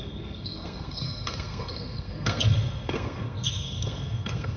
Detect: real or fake fake